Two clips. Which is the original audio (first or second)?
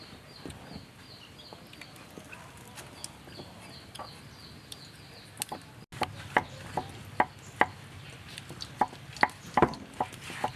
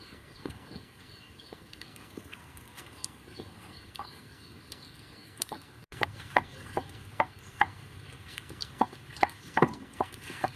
first